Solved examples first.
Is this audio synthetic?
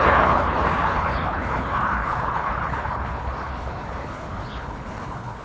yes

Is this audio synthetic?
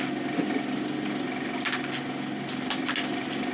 no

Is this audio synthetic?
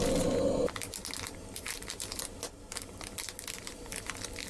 no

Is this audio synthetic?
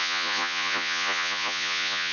yes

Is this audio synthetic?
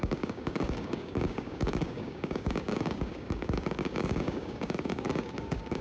yes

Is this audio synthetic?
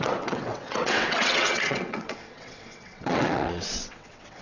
yes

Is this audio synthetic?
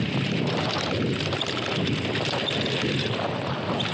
no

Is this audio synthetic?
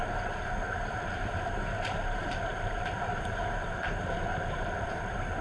yes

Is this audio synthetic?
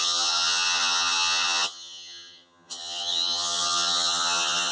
yes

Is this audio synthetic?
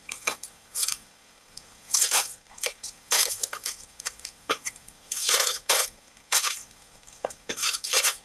yes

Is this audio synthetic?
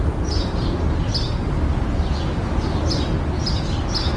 no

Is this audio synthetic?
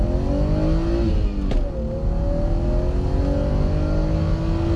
no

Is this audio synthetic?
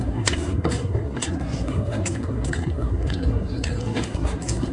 yes